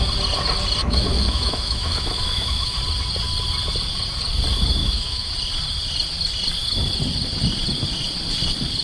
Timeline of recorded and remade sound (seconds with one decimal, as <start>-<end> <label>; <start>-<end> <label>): 0.0-0.8 recorded; 0.8-2.8 remade; 2.8-4.8 recorded; 4.8-5.3 remade; 5.3-8.8 recorded